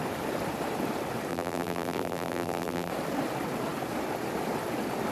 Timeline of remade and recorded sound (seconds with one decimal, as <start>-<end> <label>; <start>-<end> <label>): 0.0-1.3 recorded; 1.3-2.9 remade; 2.9-5.1 recorded